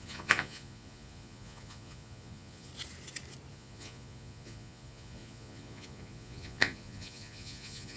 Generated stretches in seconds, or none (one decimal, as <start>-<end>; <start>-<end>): 0.0-2.7; 3.5-8.0